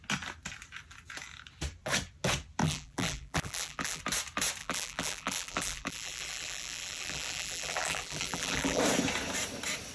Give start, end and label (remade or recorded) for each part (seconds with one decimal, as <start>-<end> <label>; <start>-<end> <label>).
0.0-2.6 recorded; 2.6-4.0 remade; 4.0-4.6 recorded; 4.6-8.8 remade; 8.8-9.9 recorded